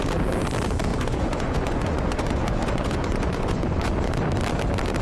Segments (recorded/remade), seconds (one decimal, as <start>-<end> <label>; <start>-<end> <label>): 0.0-0.9 recorded; 0.9-3.9 remade; 3.9-5.0 recorded